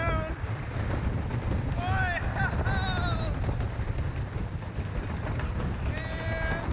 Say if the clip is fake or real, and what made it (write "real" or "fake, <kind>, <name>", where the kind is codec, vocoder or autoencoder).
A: real